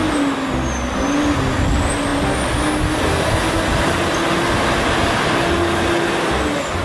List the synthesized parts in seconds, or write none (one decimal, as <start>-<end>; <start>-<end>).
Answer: none

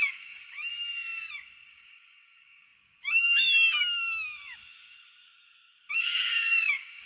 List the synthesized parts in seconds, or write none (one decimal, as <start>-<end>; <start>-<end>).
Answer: 0.0-0.7; 1.7-7.1

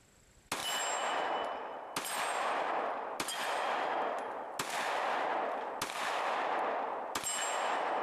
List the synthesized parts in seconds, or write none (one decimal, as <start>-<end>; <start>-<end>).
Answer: none